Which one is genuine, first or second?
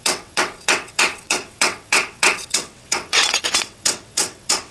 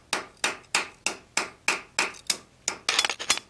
second